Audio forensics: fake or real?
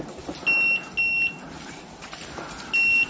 real